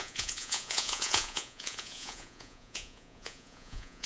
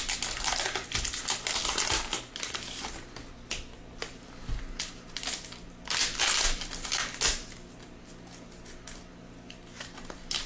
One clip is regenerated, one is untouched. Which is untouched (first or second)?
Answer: second